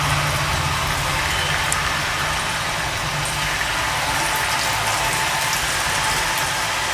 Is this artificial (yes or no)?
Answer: no